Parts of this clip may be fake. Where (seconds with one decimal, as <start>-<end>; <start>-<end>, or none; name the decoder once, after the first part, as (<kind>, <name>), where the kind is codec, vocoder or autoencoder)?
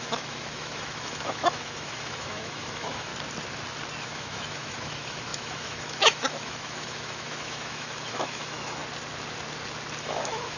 0.0-3.1 (autoencoder, DAC-VAE); 4.0-8.8; 10.0-10.6